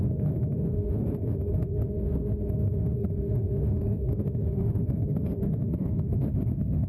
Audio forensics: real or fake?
fake